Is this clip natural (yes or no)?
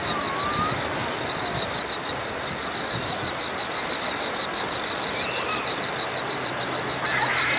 yes